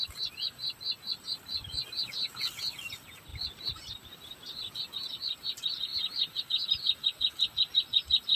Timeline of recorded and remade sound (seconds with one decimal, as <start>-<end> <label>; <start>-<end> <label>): 0.0-3.3 recorded; 3.3-4.7 remade; 4.7-5.9 recorded; 5.9-6.4 remade; 6.4-8.4 recorded